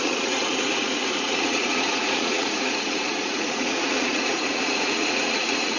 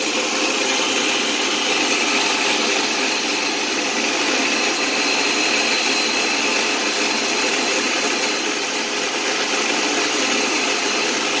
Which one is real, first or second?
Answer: second